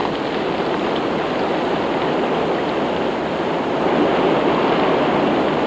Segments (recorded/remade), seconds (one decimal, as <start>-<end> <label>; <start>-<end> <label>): 0.0-5.7 recorded